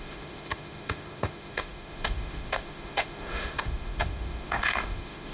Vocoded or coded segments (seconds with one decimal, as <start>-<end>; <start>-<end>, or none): 0.0-5.3